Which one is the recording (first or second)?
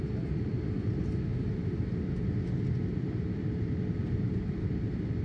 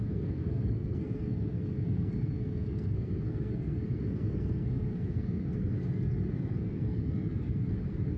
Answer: first